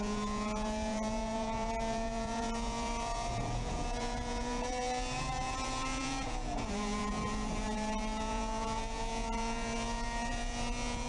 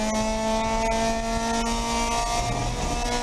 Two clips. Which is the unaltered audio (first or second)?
second